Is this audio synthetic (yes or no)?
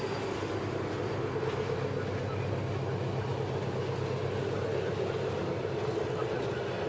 no